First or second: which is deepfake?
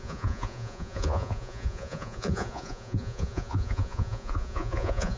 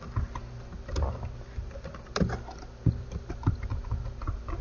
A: first